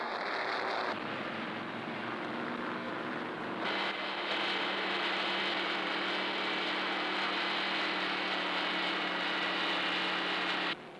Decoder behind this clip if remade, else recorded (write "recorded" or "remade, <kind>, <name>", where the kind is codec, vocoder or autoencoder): recorded